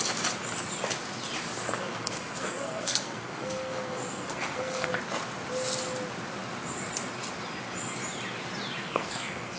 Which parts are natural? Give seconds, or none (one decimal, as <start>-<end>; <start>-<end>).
0.0-1.8; 4.9-8.8